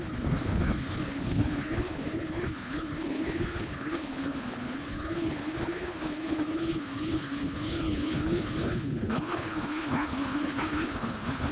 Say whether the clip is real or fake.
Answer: fake